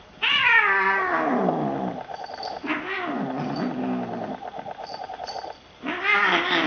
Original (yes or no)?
yes